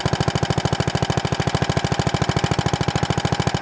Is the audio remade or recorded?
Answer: recorded